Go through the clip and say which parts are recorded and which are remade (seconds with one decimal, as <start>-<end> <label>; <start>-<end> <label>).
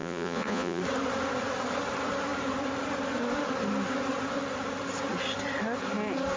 0.0-0.8 remade; 0.8-6.4 recorded